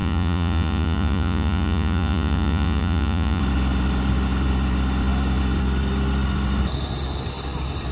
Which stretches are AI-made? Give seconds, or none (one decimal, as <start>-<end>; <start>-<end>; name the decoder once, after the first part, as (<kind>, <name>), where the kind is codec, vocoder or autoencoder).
0.0-3.4 (vocoder, Vocos)